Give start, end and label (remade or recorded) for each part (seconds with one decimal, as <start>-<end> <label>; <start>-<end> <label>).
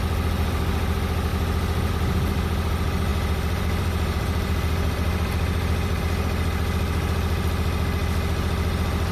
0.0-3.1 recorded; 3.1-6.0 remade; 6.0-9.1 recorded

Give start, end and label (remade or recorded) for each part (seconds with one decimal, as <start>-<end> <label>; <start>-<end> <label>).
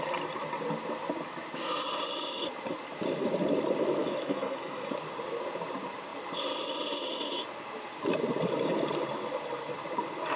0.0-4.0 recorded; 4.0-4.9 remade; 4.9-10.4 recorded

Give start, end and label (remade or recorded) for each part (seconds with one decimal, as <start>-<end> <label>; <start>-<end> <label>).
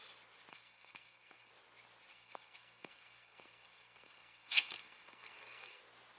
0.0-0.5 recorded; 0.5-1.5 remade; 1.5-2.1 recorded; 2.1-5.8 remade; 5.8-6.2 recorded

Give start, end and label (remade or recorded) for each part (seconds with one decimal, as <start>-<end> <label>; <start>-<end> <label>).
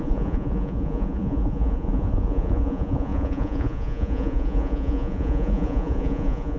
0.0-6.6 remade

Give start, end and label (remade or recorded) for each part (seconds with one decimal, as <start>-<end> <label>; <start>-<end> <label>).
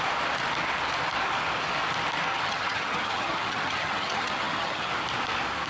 0.0-2.3 recorded; 2.3-4.9 remade; 4.9-5.7 recorded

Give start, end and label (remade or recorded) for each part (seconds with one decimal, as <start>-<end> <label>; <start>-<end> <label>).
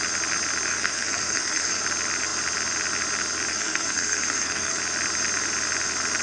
0.0-0.7 recorded; 0.7-1.8 remade; 1.8-3.5 recorded; 3.5-4.8 remade; 4.8-6.2 recorded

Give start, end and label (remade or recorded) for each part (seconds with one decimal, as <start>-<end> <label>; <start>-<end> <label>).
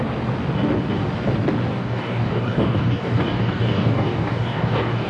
0.0-1.7 recorded; 1.7-5.1 remade